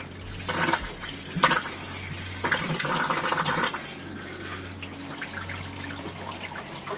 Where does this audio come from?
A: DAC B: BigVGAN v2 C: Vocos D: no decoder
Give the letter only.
D